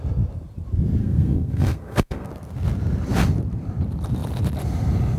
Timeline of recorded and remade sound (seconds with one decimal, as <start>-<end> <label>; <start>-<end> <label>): 0.0-1.0 recorded; 1.0-2.3 remade; 2.3-5.2 recorded